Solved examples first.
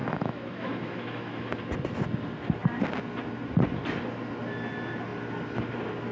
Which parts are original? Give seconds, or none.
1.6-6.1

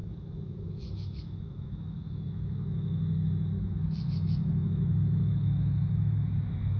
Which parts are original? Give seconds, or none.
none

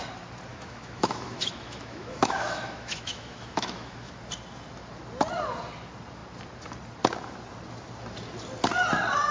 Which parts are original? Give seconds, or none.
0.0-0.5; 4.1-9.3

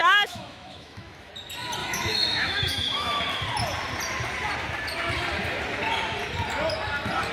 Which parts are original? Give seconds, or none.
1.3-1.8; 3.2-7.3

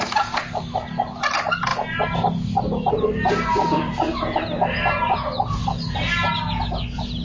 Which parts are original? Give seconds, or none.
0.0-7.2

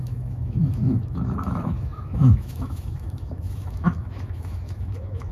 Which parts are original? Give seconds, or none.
none

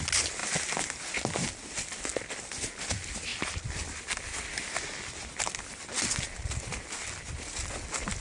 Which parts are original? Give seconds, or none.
0.0-8.2